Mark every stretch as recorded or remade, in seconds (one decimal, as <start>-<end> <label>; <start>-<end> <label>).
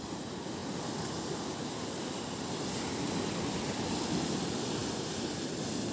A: 0.0-5.9 recorded